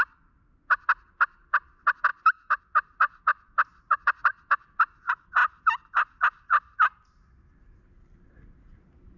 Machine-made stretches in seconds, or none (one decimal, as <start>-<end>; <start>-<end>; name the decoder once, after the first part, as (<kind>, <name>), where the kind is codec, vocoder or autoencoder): none